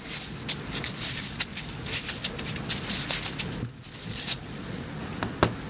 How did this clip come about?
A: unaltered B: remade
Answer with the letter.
A